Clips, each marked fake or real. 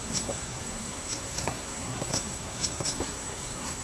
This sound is fake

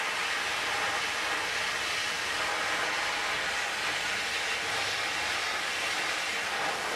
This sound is real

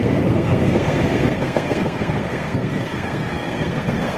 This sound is fake